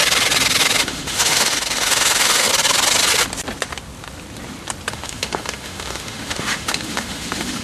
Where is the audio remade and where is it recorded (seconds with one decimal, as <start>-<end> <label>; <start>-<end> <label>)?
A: 0.0-0.8 recorded; 0.8-2.5 remade; 2.5-4.9 recorded; 4.9-7.6 remade